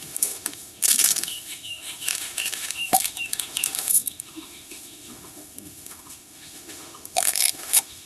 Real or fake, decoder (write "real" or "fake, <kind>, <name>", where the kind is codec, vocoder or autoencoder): fake, autoencoder, DAC-VAE